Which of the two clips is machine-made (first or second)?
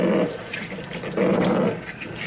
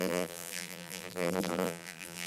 second